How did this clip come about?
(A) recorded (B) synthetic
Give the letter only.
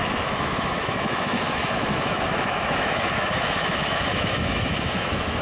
B